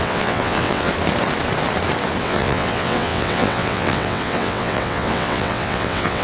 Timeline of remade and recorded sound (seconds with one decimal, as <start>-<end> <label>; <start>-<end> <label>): 0.0-0.9 remade; 0.9-2.2 recorded; 2.2-6.2 remade